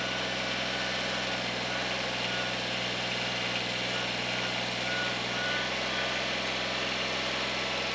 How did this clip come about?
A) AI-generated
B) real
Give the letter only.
B